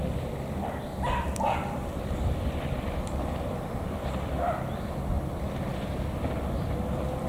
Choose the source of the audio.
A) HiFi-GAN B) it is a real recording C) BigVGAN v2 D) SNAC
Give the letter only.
C